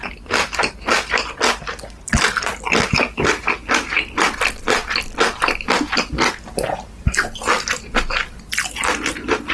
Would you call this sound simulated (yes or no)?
no